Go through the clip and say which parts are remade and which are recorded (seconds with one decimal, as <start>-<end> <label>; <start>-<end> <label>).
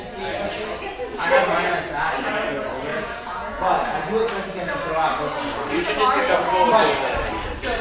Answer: 0.0-2.9 recorded; 2.9-4.3 remade; 4.3-7.8 recorded